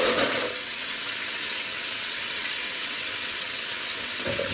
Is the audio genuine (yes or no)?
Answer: no